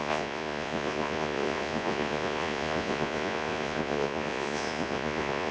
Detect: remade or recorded remade